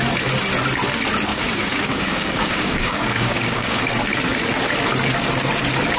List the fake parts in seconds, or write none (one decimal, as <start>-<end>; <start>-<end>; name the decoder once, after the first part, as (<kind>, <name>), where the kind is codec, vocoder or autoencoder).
1.3-3.9 (codec, DAC)